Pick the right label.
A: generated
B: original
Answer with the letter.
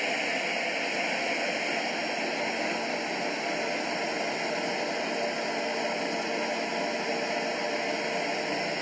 B